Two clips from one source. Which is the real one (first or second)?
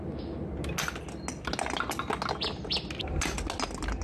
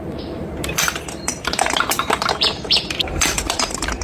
first